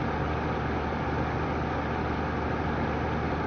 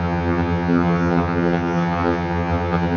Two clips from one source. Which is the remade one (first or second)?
second